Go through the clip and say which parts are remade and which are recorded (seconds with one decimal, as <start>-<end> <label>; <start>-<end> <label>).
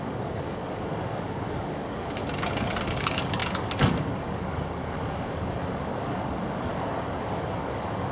0.0-2.2 remade; 2.2-2.8 recorded; 2.8-8.1 remade